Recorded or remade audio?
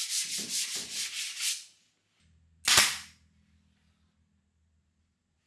recorded